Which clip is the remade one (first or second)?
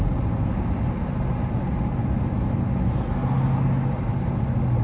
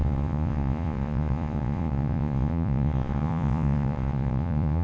second